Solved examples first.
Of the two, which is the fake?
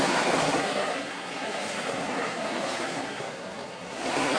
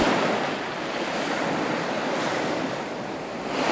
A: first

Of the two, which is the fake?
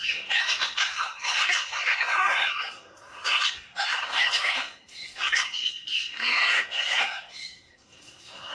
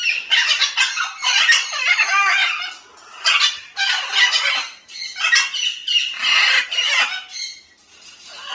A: first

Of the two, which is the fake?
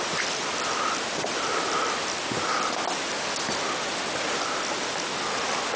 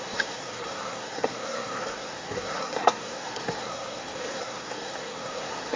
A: second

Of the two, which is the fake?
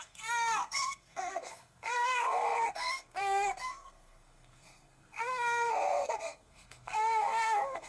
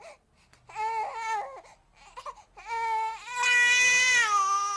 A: first